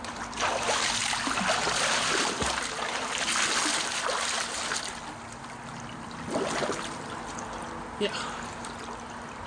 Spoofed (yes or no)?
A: no